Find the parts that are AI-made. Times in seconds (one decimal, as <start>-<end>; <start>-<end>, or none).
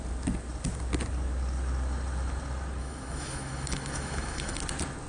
2.8-4.6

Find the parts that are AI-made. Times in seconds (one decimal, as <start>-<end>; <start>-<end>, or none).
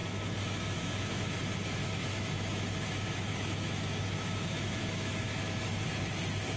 0.0-1.4; 1.8-5.8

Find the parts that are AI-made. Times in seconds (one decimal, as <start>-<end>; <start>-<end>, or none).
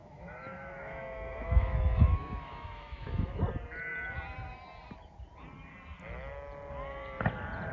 0.0-3.4